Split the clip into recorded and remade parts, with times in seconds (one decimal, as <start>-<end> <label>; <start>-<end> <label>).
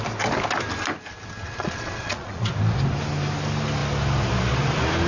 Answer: 0.0-1.4 recorded; 1.4-2.5 remade; 2.5-5.1 recorded